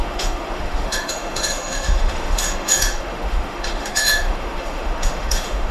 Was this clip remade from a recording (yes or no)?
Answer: yes